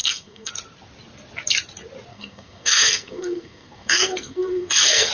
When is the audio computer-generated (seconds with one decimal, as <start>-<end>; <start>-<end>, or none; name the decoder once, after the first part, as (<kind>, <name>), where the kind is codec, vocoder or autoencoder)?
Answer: 0.0-0.5 (codec, SNAC); 2.1-5.1